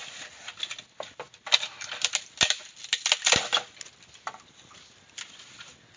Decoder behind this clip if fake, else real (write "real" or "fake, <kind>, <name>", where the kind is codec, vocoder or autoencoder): real